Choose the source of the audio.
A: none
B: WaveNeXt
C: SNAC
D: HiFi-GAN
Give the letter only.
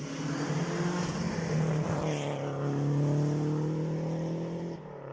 A